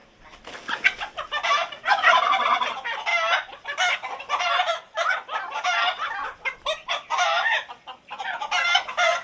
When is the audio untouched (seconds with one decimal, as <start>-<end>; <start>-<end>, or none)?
0.0-9.2